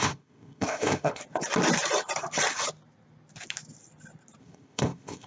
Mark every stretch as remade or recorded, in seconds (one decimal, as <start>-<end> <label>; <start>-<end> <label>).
0.0-1.2 remade; 1.2-4.4 recorded; 4.4-5.3 remade